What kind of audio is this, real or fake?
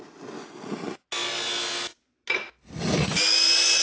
real